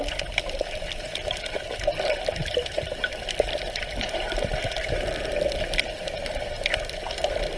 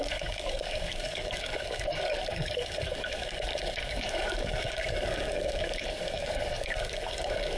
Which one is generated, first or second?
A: second